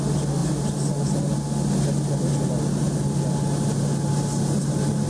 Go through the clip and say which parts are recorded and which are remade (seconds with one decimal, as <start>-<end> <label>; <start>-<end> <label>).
0.0-5.1 recorded